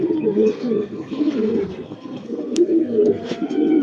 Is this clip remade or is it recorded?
remade